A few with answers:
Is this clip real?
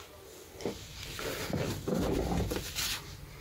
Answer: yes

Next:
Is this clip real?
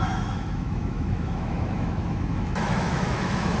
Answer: no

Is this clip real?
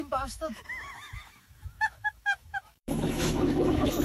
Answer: no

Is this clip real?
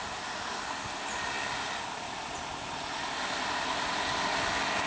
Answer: yes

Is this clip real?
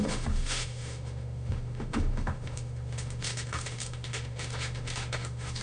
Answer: no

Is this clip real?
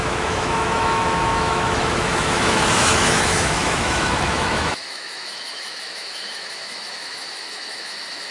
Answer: no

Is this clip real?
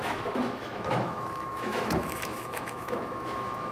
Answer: no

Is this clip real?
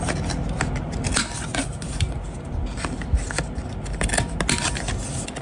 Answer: yes